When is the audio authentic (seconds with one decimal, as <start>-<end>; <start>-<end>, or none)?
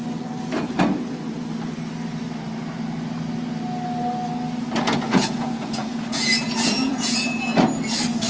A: 0.0-4.8; 7.5-8.3